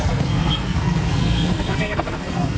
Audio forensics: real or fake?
fake